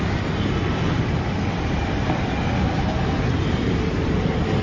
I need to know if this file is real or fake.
real